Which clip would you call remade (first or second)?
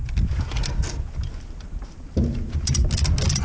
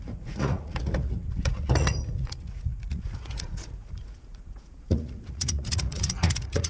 second